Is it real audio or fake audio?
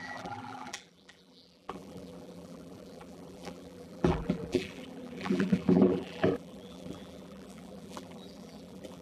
fake